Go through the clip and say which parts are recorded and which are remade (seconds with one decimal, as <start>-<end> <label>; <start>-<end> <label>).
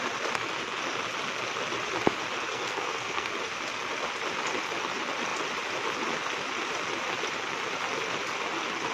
0.0-2.5 recorded; 2.5-3.3 remade; 3.3-8.9 recorded